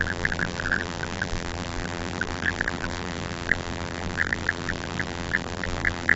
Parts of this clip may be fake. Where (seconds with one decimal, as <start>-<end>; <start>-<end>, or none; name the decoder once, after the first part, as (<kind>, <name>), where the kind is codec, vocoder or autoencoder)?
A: 0.0-6.2 (vocoder, BigVGAN v2)